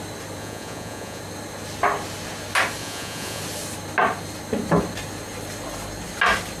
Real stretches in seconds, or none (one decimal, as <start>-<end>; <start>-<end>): 0.0-0.4; 1.2-2.8; 3.4-6.6